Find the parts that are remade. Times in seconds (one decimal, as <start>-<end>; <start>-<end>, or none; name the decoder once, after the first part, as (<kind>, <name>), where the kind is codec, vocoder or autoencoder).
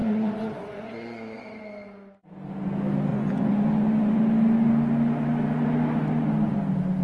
0.0-1.6 (vocoder, Vocos); 3.1-4.2